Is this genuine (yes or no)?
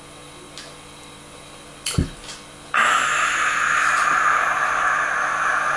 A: yes